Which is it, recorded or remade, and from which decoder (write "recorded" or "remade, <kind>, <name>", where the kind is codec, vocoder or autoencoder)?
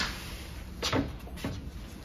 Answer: remade, vocoder, BigVGAN v2